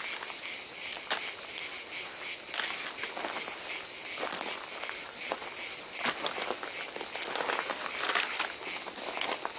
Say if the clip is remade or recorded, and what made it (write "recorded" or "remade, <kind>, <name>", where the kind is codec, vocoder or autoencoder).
recorded